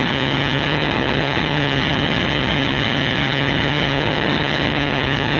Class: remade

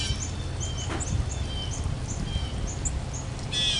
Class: recorded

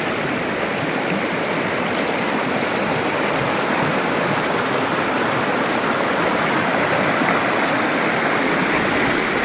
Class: recorded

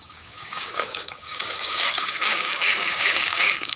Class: remade